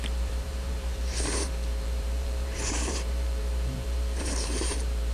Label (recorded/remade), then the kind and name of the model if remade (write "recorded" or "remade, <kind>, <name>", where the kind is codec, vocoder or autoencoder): remade, vocoder, BigVGAN v2